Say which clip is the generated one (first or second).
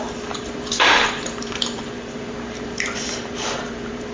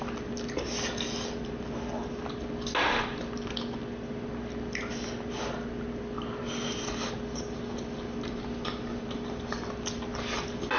first